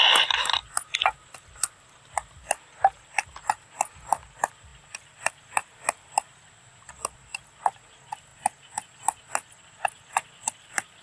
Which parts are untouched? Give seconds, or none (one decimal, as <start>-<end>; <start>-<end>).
0.0-11.0